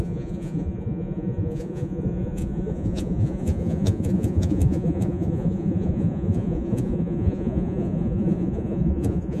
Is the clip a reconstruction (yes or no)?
yes